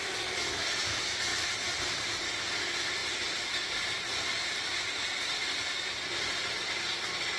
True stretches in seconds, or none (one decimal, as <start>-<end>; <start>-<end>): 0.0-1.3; 2.1-3.0; 5.9-7.4